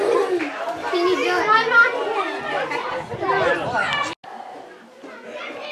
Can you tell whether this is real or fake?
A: real